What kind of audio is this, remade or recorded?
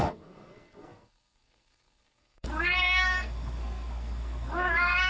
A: remade